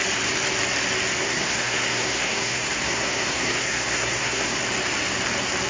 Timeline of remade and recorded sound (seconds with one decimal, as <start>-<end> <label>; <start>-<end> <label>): 0.0-1.2 recorded; 1.2-4.6 remade; 4.6-5.7 recorded

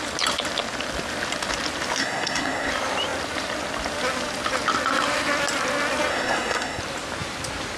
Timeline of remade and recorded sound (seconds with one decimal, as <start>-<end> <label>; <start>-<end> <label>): 0.0-2.0 recorded; 2.0-2.7 remade; 2.7-6.1 recorded; 6.1-6.8 remade; 6.8-7.8 recorded

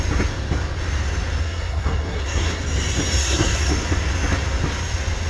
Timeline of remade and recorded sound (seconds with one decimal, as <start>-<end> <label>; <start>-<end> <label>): 0.0-1.4 recorded; 1.4-2.6 remade; 2.6-3.2 recorded; 3.2-3.7 remade; 3.7-5.3 recorded

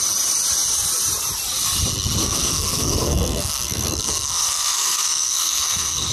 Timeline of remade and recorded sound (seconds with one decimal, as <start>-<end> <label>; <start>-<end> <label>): 0.0-2.2 recorded; 2.2-6.1 remade